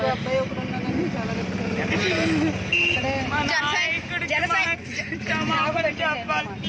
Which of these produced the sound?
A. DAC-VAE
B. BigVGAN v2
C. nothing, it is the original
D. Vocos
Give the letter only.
C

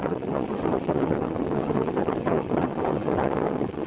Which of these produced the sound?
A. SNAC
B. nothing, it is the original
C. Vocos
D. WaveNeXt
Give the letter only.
D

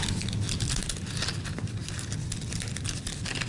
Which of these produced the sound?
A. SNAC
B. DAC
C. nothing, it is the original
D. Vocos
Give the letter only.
C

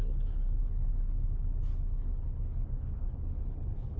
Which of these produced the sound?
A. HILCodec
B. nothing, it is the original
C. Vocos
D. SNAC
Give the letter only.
A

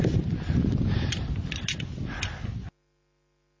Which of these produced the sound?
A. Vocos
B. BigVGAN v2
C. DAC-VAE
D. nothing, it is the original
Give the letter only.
D